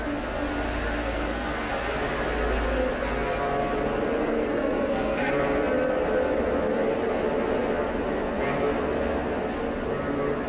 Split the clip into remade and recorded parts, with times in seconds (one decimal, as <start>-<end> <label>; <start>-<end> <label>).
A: 0.0-1.0 recorded; 1.0-1.7 remade; 1.7-4.2 recorded; 4.2-5.3 remade; 5.3-10.5 recorded